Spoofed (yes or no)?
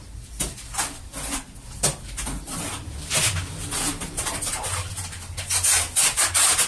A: no